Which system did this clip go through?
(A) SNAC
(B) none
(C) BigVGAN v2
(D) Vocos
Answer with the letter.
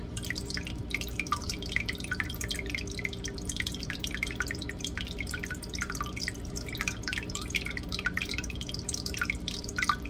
C